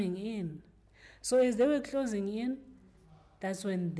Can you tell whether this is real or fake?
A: real